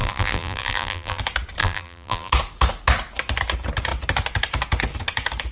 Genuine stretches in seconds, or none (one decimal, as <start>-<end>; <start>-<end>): 1.2-1.6; 2.3-5.5